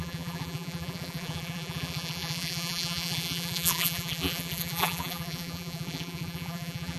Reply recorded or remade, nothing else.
remade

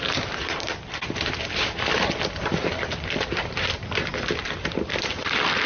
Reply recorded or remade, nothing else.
remade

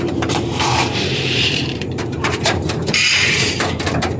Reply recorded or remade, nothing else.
remade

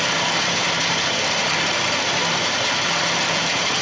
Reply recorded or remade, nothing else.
remade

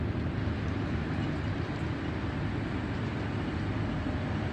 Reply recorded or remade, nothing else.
recorded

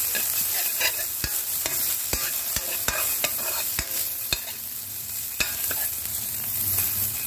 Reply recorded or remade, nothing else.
remade